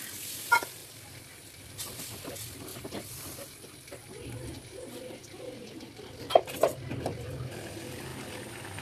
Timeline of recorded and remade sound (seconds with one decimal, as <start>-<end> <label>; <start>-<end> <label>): 0.0-8.1 remade; 8.1-8.8 recorded

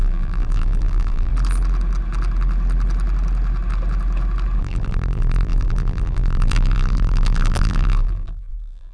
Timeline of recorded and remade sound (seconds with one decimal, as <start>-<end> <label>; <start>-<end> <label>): 0.0-1.3 remade; 1.3-4.6 recorded; 4.6-8.9 remade

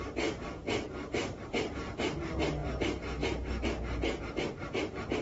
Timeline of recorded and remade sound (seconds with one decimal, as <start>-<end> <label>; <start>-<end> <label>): 0.0-5.2 recorded

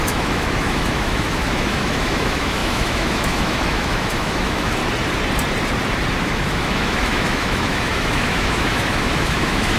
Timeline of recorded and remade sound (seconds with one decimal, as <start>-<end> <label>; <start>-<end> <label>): 0.0-4.8 remade; 4.8-6.2 recorded; 6.2-9.8 remade

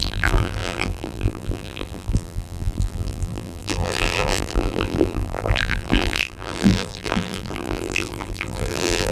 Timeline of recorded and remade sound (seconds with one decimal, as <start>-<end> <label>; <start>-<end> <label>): 0.0-9.1 remade